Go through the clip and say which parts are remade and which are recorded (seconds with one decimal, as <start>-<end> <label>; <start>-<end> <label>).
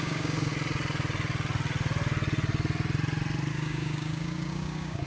0.0-0.5 remade; 0.5-3.5 recorded; 3.5-5.1 remade